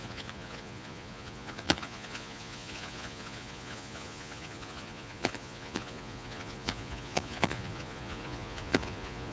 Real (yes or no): no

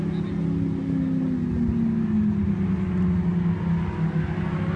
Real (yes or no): yes